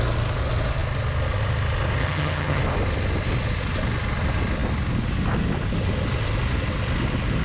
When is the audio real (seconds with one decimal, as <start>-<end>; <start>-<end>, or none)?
0.0-2.0; 2.6-7.4